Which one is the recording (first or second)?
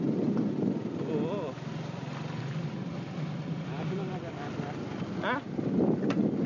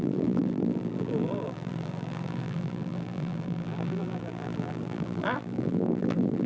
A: first